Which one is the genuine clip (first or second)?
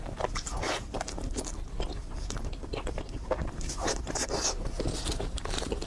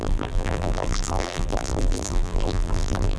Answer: first